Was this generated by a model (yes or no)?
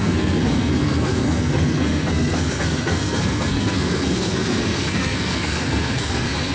yes